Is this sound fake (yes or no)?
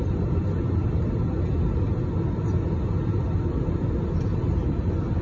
no